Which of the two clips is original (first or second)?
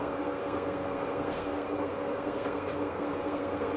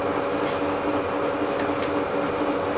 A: second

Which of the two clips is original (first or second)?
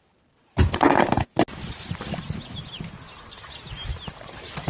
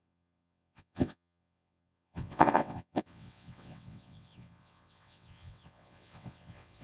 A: first